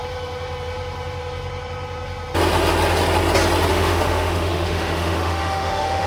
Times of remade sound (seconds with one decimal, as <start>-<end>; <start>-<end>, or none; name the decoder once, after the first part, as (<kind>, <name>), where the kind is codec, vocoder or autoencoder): 3.7-6.1 (autoencoder, DAC-VAE)